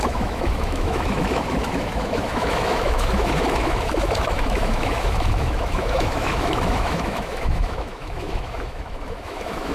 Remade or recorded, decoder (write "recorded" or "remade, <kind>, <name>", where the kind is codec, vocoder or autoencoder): remade, autoencoder, DAC-VAE